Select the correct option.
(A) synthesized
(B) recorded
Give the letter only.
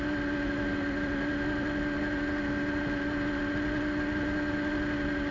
B